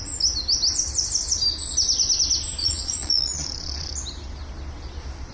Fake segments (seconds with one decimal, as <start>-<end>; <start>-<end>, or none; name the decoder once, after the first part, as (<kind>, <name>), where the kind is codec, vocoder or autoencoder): 2.6-3.9 (vocoder, Vocos)